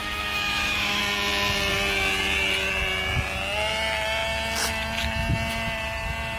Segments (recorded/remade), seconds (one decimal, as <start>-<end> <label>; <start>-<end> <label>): 0.0-1.0 remade; 1.0-6.4 recorded